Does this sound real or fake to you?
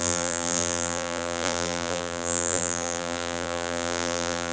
fake